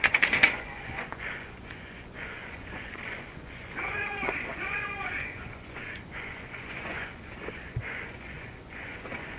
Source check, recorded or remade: remade